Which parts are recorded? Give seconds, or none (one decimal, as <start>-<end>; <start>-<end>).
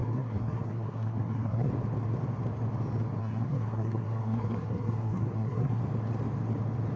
1.7-3.2; 5.8-7.0